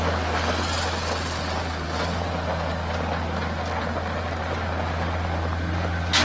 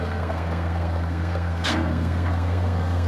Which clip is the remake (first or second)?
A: second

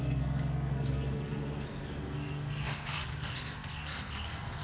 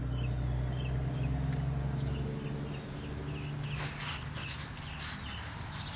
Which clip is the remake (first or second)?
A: first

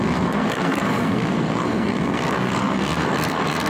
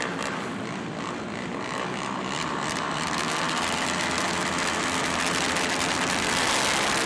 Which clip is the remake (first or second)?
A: first